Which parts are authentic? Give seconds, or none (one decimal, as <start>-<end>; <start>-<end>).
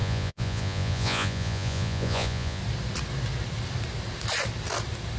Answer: 2.6-5.2